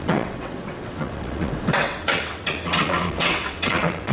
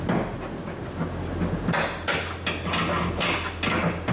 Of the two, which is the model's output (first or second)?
first